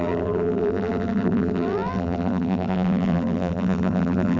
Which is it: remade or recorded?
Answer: remade